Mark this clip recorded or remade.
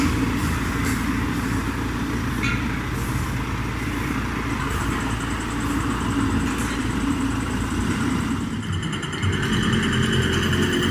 recorded